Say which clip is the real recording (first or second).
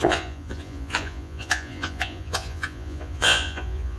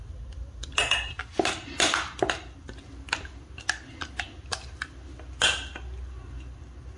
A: second